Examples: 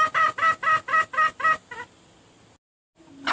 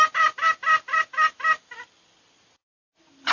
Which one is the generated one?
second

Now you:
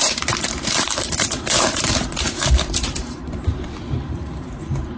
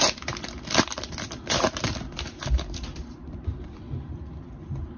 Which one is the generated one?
first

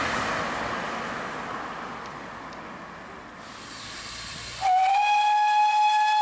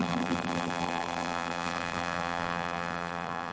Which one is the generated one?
second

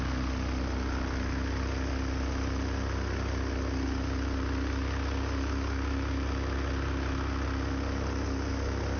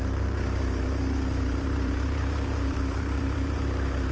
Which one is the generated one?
second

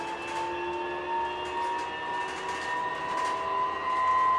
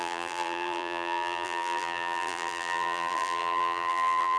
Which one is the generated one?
second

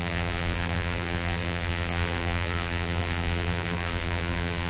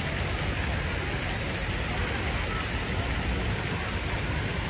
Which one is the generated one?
first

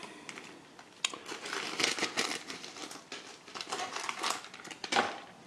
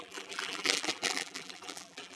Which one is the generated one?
second